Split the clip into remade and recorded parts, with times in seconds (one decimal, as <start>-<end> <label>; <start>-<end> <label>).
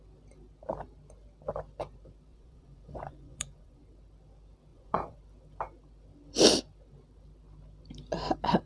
0.0-2.3 recorded; 2.3-3.8 remade; 3.8-4.7 recorded; 4.7-5.2 remade; 5.2-8.7 recorded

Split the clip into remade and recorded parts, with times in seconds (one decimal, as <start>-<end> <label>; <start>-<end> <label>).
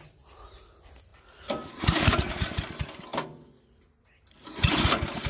0.0-5.3 recorded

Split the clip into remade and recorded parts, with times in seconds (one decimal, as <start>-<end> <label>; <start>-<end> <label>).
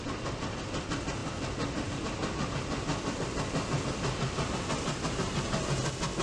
0.0-6.2 recorded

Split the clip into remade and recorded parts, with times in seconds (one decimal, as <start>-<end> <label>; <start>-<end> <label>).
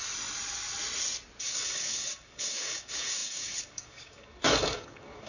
0.0-1.4 recorded; 1.4-5.3 remade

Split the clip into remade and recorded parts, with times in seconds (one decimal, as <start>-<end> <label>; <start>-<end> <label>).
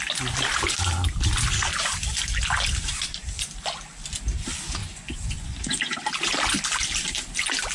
0.0-4.8 recorded; 4.8-6.0 remade; 6.0-7.7 recorded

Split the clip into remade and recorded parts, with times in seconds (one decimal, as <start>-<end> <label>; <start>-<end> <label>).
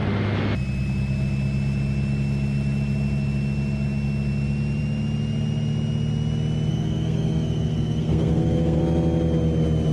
0.0-6.7 recorded; 6.7-8.8 remade; 8.8-9.9 recorded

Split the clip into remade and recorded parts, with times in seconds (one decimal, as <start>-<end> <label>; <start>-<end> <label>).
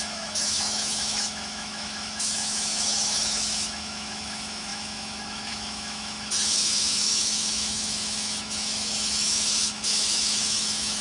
0.0-11.0 remade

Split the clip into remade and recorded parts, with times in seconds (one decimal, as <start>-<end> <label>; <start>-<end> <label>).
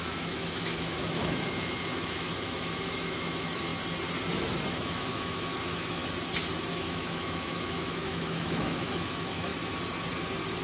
0.0-3.7 remade; 3.7-4.7 recorded; 4.7-6.0 remade; 6.0-6.7 recorded; 6.7-9.5 remade; 9.5-10.6 recorded